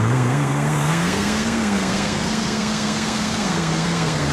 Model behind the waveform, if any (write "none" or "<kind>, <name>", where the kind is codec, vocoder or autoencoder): codec, SNAC